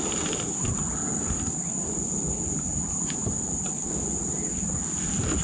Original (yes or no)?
yes